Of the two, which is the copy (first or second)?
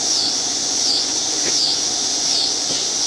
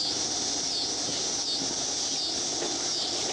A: first